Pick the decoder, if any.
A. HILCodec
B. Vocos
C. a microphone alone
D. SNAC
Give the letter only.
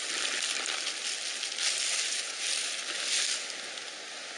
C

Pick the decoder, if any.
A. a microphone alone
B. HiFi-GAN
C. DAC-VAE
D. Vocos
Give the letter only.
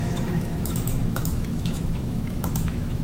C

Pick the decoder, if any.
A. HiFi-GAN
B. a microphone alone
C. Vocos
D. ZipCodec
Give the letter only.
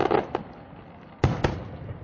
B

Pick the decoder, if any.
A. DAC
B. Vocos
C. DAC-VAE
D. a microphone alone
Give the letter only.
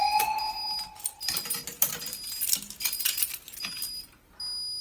D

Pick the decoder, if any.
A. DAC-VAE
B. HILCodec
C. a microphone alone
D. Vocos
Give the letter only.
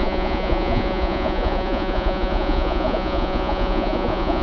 D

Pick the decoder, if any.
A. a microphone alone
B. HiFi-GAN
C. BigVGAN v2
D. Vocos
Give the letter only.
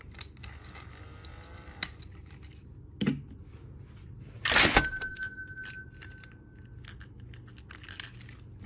A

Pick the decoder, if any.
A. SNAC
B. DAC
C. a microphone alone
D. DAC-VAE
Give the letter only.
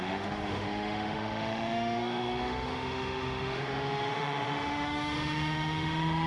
D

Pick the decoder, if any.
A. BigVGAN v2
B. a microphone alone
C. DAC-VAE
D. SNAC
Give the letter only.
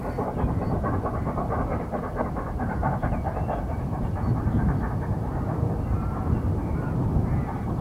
A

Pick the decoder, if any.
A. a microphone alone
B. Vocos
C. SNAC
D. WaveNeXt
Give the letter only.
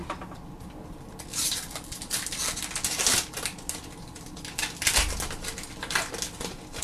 A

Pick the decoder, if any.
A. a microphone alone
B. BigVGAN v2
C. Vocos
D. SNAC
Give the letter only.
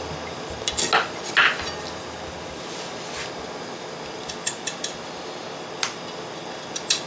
A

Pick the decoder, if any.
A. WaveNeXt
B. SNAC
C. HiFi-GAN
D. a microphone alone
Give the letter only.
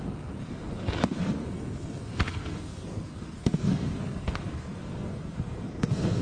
B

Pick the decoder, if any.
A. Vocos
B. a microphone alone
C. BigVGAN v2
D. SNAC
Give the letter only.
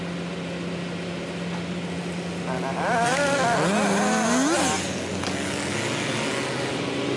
B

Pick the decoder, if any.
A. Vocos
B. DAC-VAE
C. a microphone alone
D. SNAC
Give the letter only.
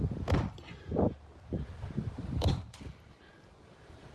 C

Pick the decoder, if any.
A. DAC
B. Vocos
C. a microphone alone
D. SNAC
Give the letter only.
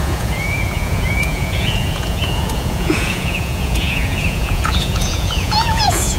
B